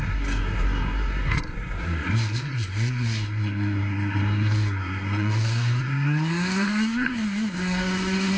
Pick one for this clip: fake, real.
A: fake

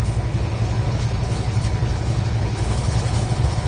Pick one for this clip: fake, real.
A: fake